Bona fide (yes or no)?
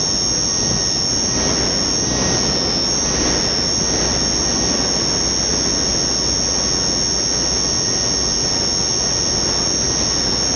yes